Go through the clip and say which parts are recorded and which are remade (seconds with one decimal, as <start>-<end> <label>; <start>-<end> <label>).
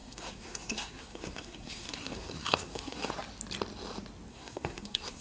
0.0-3.1 remade; 3.1-4.3 recorded; 4.3-5.2 remade